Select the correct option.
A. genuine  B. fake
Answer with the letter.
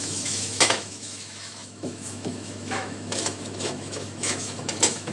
B